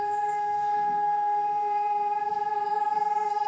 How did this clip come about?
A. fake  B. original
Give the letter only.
A